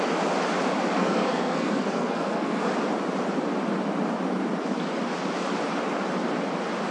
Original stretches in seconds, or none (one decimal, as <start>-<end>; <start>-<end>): 0.0-1.0; 2.6-6.9